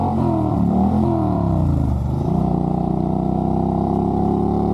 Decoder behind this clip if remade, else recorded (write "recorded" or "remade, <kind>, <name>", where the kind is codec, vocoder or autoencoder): remade, vocoder, BigVGAN v2